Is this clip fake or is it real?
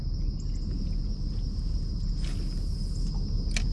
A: real